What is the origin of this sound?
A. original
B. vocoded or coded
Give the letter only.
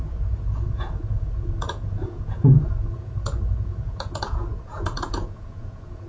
B